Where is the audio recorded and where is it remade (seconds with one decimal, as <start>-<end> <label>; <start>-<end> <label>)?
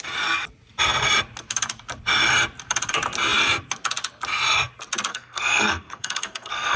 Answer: 0.0-5.1 recorded; 5.1-6.8 remade